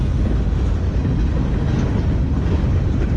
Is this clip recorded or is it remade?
recorded